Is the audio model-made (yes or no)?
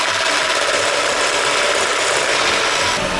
no